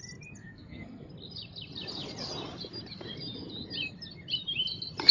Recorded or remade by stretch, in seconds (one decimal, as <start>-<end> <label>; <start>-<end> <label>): 0.0-0.4 recorded; 0.4-1.1 remade; 1.1-5.1 recorded